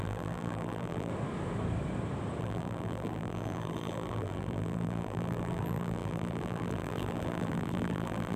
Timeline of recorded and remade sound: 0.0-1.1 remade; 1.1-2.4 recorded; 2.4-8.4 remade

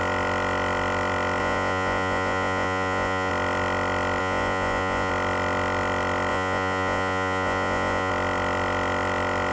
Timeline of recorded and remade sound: 0.0-1.4 recorded; 1.4-3.3 remade; 3.3-4.2 recorded; 4.2-5.1 remade; 5.1-6.3 recorded; 6.3-8.1 remade; 8.1-9.5 recorded

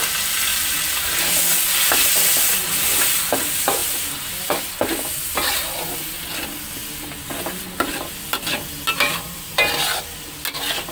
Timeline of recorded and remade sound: 0.0-0.5 recorded; 0.5-1.4 remade; 1.4-10.9 recorded